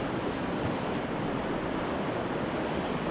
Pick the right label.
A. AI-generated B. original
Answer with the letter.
B